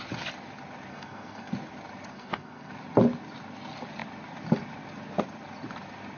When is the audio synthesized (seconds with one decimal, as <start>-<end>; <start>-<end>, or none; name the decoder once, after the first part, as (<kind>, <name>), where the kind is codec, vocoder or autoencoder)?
0.9-1.5 (codec, SNAC); 2.1-2.7

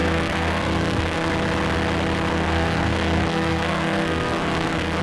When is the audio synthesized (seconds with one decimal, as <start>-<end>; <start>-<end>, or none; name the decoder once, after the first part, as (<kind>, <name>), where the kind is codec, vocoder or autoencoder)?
0.0-1.3 (codec, SNAC); 2.3-5.0

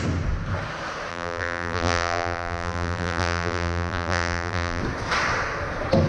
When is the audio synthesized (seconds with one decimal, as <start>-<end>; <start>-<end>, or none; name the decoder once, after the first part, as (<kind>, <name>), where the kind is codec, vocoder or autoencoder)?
1.1-4.8 (vocoder, BigVGAN v2)

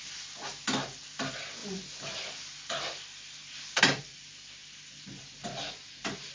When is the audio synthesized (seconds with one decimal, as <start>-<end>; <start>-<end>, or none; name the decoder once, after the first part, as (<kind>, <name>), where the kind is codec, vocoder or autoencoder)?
none

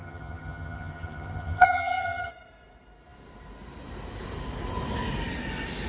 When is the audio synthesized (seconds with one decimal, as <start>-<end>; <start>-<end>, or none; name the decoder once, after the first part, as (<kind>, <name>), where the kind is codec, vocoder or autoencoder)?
0.0-2.3 (vocoder, HiFi-GAN)

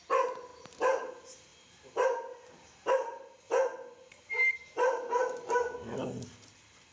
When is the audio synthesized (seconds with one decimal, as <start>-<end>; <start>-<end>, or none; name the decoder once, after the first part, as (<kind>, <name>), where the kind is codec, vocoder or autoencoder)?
0.5-1.1 (vocoder, BigVGAN v2); 1.5-3.3

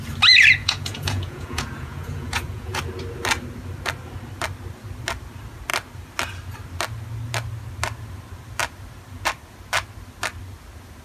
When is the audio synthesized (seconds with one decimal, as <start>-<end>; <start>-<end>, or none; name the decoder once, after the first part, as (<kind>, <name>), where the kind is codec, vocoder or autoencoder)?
0.6-2.8 (vocoder, Vocos)

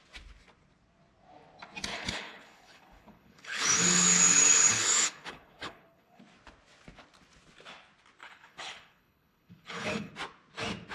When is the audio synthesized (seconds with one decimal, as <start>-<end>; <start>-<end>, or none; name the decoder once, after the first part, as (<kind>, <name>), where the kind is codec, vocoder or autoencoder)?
1.9-6.2 (codec, HILCodec); 8.2-10.1